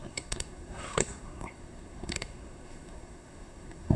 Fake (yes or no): yes